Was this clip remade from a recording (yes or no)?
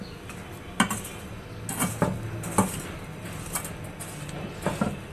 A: no